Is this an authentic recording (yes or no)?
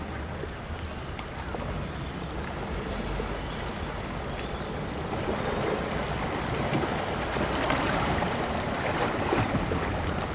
yes